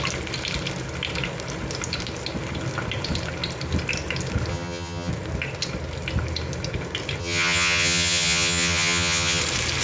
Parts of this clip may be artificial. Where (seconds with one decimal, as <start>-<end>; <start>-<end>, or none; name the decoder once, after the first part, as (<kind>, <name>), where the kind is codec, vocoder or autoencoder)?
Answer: 4.5-5.1 (vocoder, HiFi-GAN); 7.2-9.4